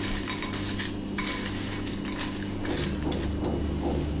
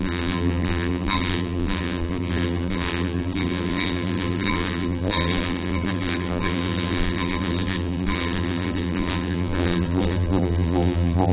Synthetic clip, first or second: second